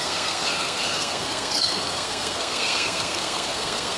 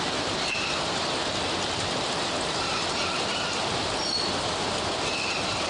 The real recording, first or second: second